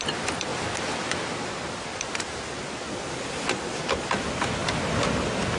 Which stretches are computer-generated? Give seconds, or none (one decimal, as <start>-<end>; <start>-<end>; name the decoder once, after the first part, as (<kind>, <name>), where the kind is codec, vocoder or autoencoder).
none